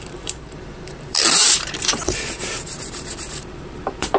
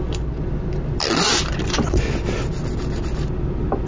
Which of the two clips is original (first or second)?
second